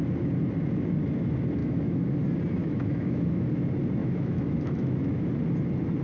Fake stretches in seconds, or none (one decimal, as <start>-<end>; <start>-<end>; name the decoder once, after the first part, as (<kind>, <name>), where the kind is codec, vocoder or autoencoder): 1.6-2.2 (autoencoder, DAC-VAE); 2.6-3.5; 4.0-5.3